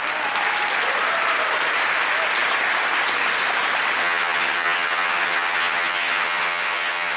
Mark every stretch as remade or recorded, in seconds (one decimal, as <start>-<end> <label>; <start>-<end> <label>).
0.0-4.0 recorded; 4.0-7.2 remade